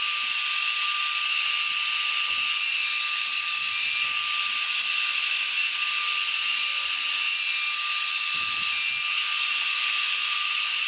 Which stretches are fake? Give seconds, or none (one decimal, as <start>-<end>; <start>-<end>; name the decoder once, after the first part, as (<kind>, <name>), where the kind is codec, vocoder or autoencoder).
9.1-10.9 (vocoder, Vocos)